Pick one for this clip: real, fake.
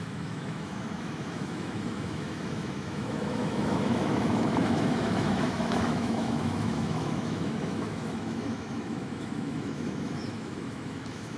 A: fake